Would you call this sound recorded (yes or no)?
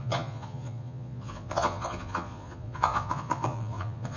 no